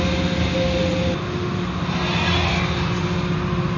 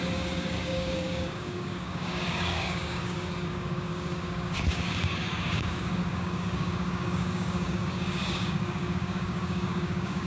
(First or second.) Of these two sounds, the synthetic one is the second